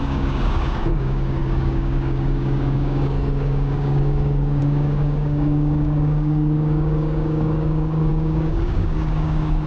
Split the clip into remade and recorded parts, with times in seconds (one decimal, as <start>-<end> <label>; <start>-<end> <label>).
0.0-9.7 remade